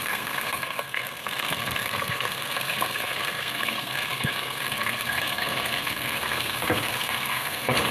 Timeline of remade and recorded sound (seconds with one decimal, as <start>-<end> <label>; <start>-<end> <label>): 0.0-7.9 remade